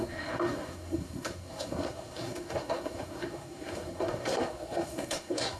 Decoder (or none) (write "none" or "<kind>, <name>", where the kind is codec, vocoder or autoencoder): codec, SNAC